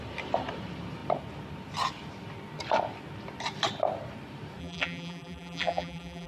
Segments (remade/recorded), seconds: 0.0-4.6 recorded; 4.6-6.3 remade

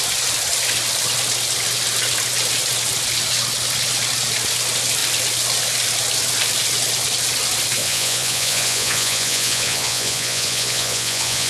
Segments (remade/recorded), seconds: 0.0-7.8 recorded; 7.8-11.5 remade